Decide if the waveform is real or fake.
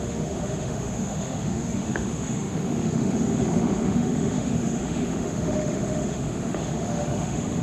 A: fake